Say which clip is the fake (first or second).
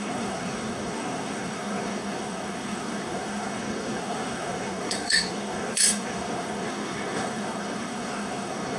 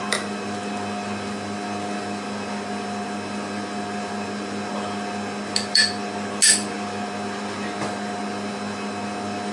first